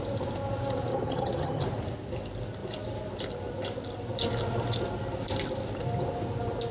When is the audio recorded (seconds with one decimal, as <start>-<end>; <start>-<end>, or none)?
0.0-0.9; 1.6-6.7